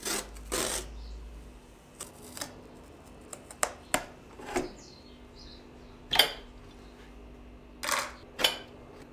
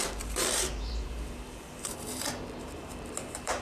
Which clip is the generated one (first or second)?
second